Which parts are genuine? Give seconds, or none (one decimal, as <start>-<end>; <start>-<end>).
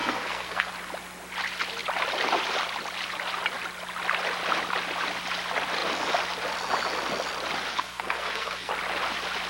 0.7-7.7; 8.7-9.5